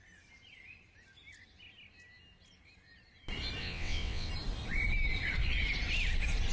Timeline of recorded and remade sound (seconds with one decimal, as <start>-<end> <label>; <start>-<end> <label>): 0.0-3.6 recorded; 3.6-4.3 remade; 4.3-6.5 recorded